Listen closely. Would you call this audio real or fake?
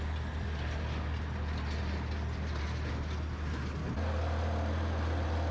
real